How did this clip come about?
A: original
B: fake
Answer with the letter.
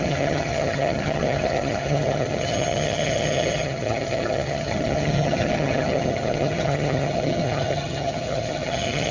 B